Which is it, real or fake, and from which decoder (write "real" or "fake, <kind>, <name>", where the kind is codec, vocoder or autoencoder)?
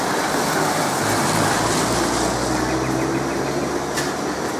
real